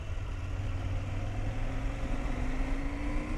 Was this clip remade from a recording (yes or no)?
no